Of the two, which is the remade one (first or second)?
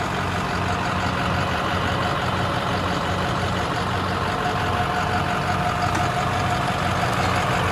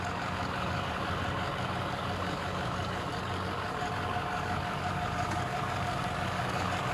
second